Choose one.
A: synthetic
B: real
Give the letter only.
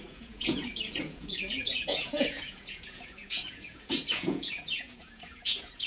A